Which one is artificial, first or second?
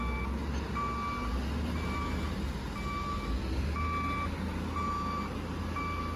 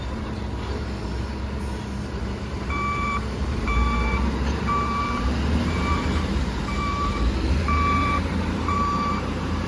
second